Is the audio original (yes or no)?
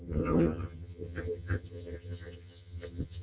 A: no